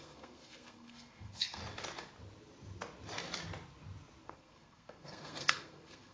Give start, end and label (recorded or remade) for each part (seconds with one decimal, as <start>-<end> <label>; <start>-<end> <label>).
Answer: 0.0-1.6 remade; 1.6-4.2 recorded; 4.2-6.1 remade

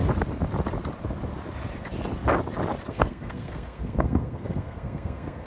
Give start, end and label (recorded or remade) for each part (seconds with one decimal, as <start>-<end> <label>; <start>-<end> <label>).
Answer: 0.0-2.9 recorded; 2.9-5.5 remade

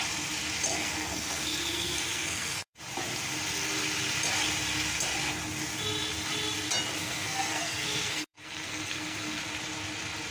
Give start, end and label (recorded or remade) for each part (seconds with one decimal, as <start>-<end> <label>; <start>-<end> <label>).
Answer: 0.0-0.7 recorded; 0.7-2.8 remade; 2.8-7.0 recorded; 7.0-9.4 remade; 9.4-10.3 recorded

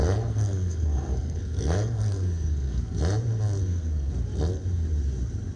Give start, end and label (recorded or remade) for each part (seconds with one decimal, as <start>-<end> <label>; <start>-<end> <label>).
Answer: 0.0-3.0 remade; 3.0-3.6 recorded; 3.6-4.1 remade; 4.1-5.6 recorded